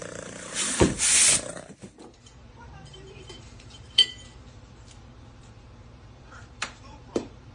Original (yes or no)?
no